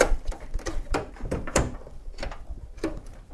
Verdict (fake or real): fake